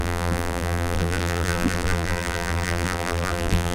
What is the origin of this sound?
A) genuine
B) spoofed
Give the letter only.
B